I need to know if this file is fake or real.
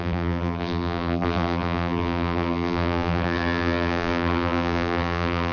fake